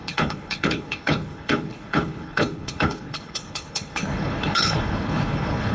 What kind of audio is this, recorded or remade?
remade